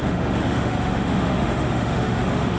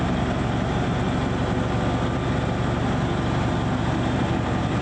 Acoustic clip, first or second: second